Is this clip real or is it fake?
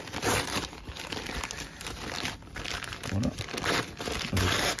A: real